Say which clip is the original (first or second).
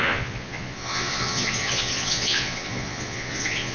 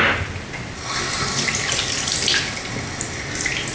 second